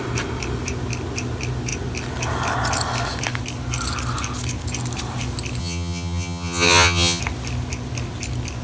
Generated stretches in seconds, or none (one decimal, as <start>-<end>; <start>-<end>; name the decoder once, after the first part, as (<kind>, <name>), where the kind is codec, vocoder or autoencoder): 5.6-7.2 (vocoder, HiFi-GAN)